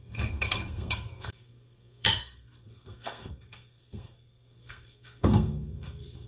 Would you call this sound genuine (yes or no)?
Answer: no